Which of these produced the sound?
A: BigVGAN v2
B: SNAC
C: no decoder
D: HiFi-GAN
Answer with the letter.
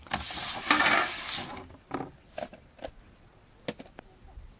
C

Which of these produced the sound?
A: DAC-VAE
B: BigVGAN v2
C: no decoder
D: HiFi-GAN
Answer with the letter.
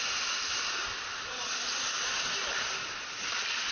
C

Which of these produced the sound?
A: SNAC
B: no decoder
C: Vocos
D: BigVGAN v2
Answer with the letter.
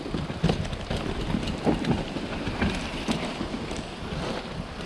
B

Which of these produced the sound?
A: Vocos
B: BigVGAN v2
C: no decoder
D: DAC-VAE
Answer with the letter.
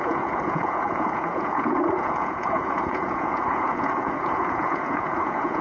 A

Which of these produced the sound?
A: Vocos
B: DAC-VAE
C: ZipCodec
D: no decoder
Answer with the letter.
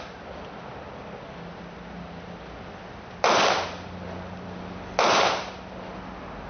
D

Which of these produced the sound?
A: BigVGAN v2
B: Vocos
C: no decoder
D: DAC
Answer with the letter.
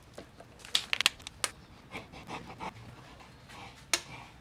C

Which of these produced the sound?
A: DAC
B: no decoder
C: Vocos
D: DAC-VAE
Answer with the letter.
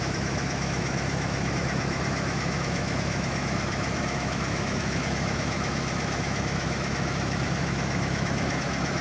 D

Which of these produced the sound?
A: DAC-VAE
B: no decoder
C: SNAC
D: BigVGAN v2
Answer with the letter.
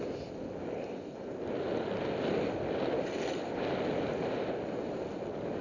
B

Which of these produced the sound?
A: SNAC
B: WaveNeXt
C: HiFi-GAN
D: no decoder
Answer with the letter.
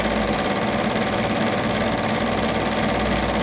D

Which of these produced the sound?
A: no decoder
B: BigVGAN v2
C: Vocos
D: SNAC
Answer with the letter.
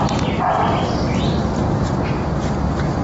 B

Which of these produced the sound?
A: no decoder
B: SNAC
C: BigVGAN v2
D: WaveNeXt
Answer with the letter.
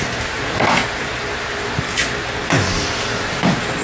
A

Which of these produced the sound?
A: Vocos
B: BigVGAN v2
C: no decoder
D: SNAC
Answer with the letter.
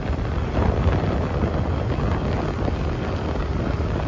C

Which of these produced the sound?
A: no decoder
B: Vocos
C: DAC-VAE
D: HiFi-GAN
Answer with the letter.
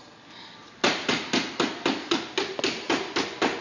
A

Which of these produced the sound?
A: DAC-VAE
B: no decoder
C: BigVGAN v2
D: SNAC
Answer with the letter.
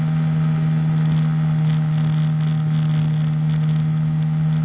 B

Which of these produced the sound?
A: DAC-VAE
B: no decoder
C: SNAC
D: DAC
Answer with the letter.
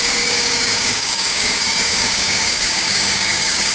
D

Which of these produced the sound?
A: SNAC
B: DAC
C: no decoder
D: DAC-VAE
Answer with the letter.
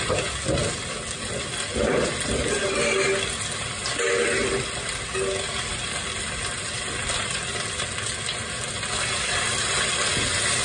C